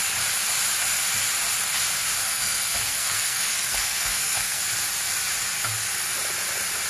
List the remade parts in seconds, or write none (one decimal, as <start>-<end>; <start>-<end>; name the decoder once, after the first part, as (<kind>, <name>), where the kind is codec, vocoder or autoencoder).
2.2-4.6 (codec, SNAC)